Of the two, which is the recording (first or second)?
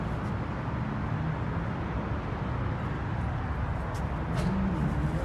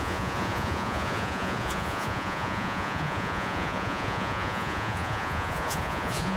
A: first